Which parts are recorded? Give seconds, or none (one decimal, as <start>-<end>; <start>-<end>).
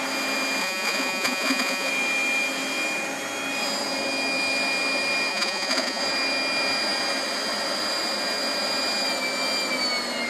0.0-0.6; 1.9-5.3; 6.0-10.3